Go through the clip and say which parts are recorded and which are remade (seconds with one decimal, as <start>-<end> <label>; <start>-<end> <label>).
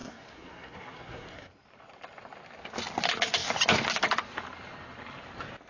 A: 0.0-1.5 remade; 1.5-5.7 recorded